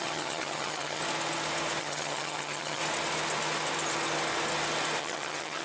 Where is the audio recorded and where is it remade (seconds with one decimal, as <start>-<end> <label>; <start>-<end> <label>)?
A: 0.0-1.0 remade; 1.0-1.8 recorded; 1.8-2.8 remade; 2.8-5.0 recorded; 5.0-5.6 remade